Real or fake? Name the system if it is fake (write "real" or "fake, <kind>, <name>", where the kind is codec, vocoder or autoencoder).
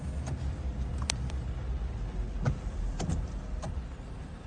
real